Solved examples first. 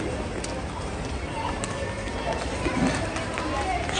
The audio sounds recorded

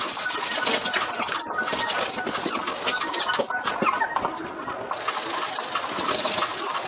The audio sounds recorded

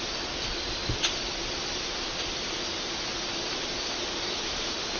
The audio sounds recorded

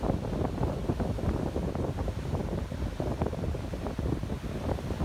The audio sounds recorded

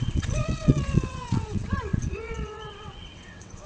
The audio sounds remade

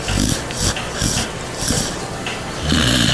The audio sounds recorded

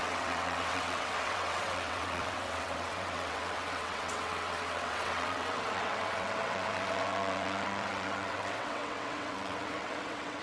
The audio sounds remade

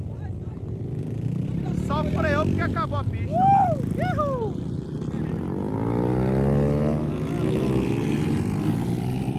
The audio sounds recorded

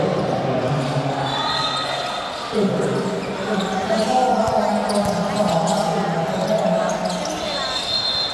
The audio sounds recorded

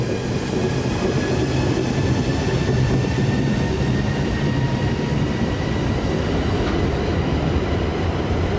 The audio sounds recorded